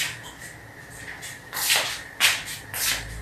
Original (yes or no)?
yes